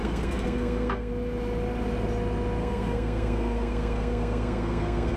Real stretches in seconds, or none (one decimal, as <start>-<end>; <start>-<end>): 1.1-2.6